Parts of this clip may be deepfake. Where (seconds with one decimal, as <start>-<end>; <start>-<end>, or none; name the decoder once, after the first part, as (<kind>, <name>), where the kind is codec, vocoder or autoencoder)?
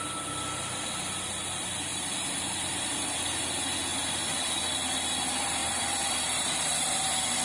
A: 1.9-3.4 (vocoder, BigVGAN v2); 3.9-4.5; 5.6-6.2